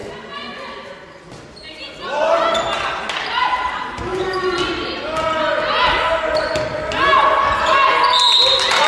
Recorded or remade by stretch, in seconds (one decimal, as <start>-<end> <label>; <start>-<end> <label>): 0.0-8.9 recorded